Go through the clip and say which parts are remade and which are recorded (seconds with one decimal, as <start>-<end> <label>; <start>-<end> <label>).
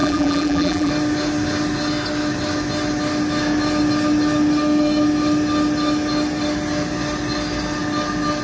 0.0-0.9 remade; 0.9-8.4 recorded